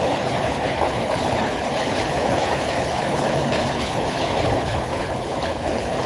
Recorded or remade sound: remade